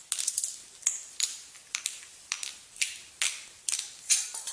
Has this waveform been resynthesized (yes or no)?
no